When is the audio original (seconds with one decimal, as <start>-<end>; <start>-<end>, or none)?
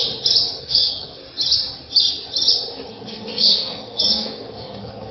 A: 0.0-0.6; 1.2-2.9